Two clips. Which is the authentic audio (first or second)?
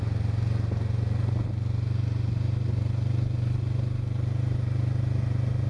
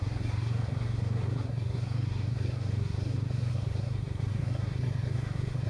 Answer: first